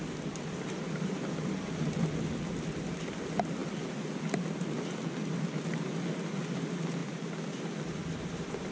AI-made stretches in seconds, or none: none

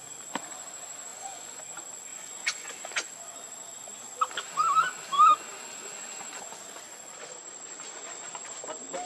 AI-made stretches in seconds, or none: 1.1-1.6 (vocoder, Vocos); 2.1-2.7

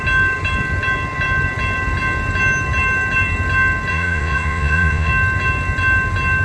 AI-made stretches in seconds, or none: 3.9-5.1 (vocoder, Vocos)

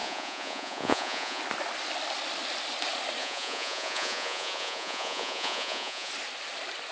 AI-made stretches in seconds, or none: 0.0-1.4 (vocoder, Vocos); 3.2-6.1

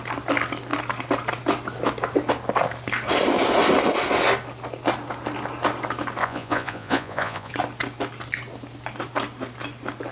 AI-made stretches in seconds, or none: 6.2-7.5 (vocoder, Vocos)

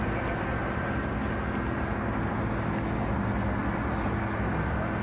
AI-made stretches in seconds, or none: none